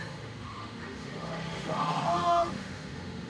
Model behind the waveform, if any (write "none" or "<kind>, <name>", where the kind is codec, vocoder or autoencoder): autoencoder, DAC-VAE